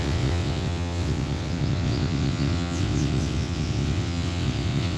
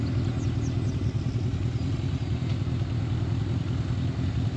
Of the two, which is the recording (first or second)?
second